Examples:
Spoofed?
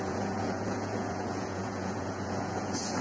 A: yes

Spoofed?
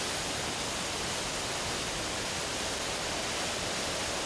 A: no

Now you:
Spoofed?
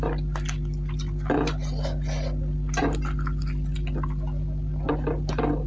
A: no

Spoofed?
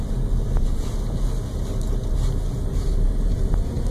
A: no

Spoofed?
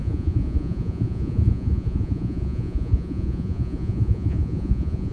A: yes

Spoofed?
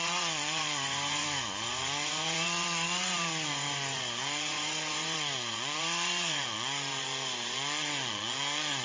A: yes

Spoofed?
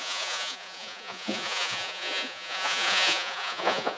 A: yes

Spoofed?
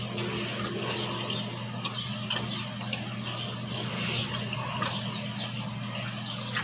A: no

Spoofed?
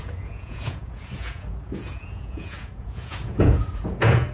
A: yes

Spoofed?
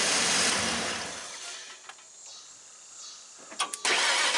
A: no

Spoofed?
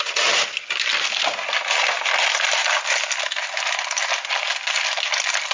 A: no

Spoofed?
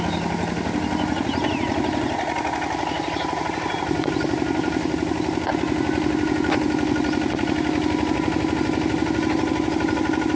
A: no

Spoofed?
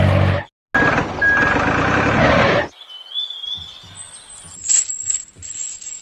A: no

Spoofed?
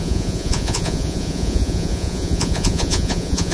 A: yes